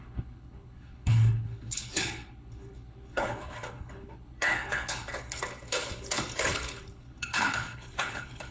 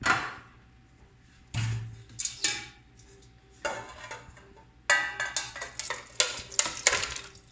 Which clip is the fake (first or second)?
first